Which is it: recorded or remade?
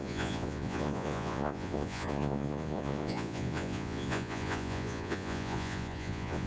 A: remade